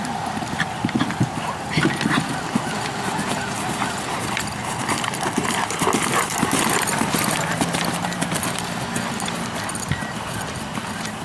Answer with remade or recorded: remade